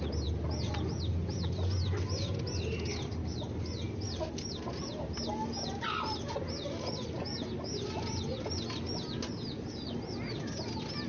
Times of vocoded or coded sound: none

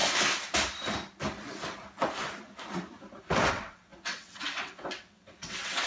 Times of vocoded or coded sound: 3.5-5.9 (vocoder, WaveNeXt)

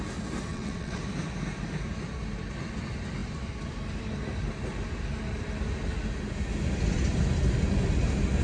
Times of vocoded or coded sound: 0.5-1.0 (vocoder, WaveNeXt)

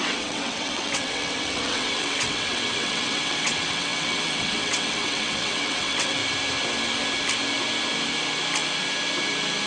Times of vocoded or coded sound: 0.0-6.2 (vocoder, WaveNeXt)

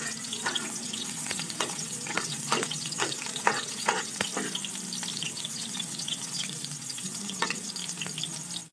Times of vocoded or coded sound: 0.0-4.3 (vocoder, WaveNeXt); 5.1-7.8

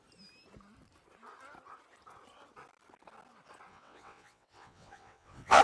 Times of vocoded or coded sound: 3.7-5.6 (vocoder, WaveNeXt)

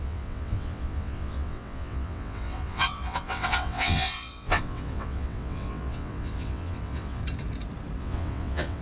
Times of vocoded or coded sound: 0.0-7.2 (vocoder, WaveNeXt); 8.0-8.8